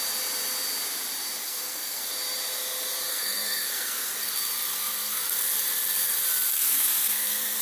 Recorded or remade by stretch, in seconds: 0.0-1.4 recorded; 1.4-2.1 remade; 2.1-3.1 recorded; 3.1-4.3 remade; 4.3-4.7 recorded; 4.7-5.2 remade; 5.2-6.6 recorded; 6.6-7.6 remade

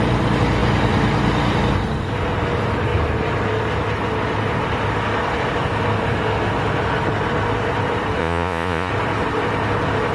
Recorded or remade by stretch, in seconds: 0.0-8.2 recorded; 8.2-8.9 remade; 8.9-10.1 recorded

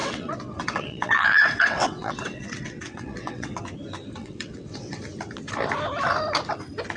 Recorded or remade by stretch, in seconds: 0.0-3.6 remade; 3.6-4.2 recorded; 4.2-5.0 remade; 5.0-7.0 recorded

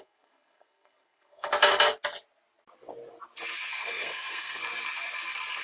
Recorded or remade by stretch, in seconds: 0.0-1.5 remade; 1.5-3.7 recorded; 3.7-4.6 remade; 4.6-5.6 recorded